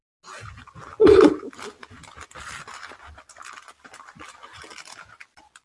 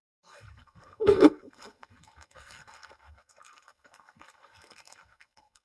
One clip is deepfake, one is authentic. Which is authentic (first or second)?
first